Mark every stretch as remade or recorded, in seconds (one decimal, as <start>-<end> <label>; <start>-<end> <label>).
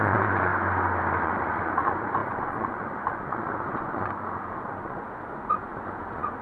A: 0.0-0.5 remade; 0.5-1.2 recorded; 1.2-6.4 remade